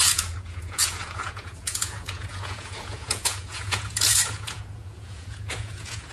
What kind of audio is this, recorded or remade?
remade